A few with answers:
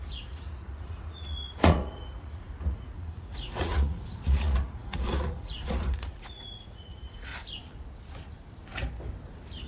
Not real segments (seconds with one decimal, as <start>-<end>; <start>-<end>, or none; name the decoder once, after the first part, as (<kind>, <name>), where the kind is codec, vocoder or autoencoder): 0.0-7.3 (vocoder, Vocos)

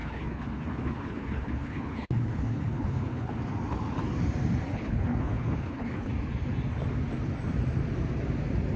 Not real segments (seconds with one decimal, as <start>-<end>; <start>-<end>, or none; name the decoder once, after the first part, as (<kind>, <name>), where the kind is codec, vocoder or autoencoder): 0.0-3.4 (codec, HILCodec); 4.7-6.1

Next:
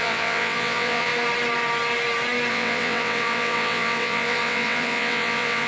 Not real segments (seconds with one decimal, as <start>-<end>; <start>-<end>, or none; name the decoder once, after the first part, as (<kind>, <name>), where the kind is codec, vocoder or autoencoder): 0.0-1.1 (vocoder, WaveNeXt); 2.5-5.7

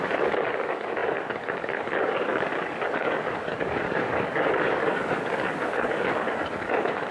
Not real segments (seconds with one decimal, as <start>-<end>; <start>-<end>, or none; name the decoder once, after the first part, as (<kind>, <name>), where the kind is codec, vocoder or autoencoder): 0.0-7.1 (codec, DAC)